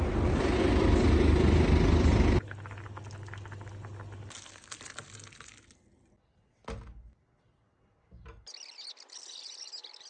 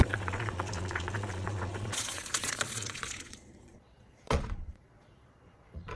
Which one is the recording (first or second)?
first